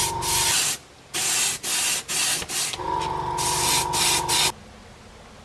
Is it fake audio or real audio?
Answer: real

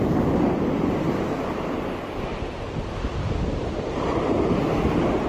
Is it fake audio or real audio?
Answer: real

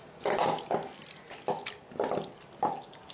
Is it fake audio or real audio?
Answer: real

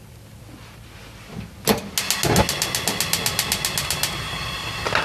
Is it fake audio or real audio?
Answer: real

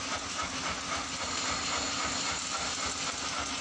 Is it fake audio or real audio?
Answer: real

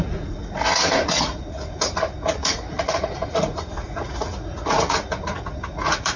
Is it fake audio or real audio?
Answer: fake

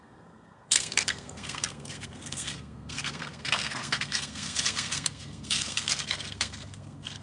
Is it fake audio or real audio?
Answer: fake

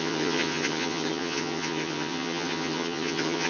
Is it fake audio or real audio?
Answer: fake